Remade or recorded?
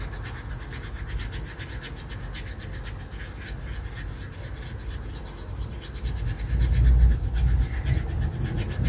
recorded